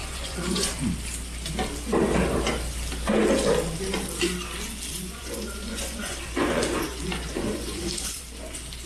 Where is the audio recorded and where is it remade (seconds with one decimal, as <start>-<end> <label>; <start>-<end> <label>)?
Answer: 0.0-0.7 remade; 0.7-4.9 recorded; 4.9-8.2 remade; 8.2-8.9 recorded